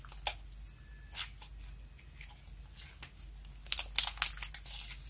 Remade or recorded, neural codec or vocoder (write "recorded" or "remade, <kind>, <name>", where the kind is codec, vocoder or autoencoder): recorded